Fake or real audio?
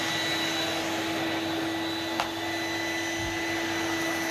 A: real